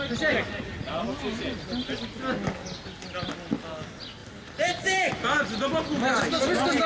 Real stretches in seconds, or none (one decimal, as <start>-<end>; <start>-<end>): 0.0-4.2